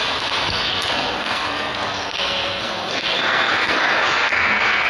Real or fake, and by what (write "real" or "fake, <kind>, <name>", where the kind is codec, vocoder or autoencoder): fake, codec, SNAC